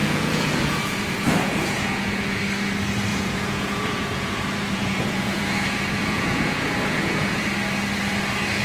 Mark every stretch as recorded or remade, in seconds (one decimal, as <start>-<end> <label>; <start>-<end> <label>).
0.0-2.4 remade; 2.4-3.1 recorded; 3.1-7.4 remade; 7.4-8.6 recorded